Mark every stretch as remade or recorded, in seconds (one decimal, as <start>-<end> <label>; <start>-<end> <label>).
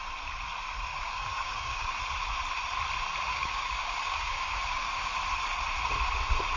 0.0-0.9 recorded; 0.9-2.0 remade; 2.0-3.3 recorded; 3.3-5.1 remade; 5.1-6.6 recorded